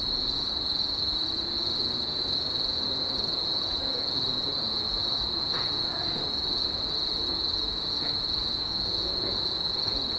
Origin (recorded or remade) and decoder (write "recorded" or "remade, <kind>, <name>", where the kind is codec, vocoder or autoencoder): remade, vocoder, Vocos